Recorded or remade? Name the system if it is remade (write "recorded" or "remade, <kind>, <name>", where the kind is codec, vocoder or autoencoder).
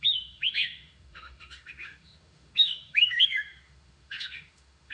remade, autoencoder, DAC-VAE